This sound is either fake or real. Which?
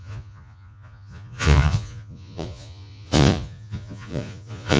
fake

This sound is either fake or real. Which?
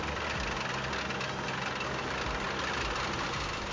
real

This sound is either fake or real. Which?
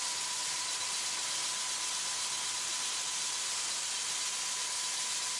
real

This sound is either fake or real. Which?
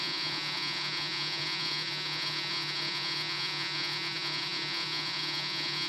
fake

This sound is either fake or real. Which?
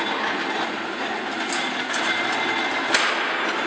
real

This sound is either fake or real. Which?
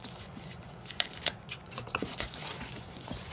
fake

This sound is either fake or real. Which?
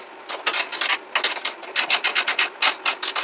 real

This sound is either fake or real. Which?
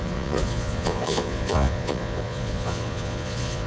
fake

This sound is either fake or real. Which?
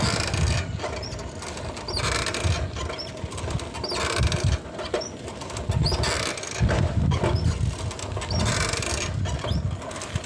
real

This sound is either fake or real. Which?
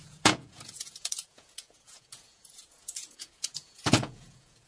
fake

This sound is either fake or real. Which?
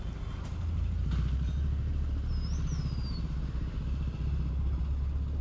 real